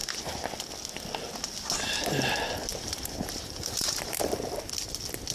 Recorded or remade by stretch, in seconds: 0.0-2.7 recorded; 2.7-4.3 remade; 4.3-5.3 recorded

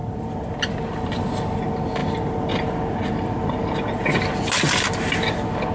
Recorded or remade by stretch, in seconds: 0.0-1.6 remade; 1.6-5.7 recorded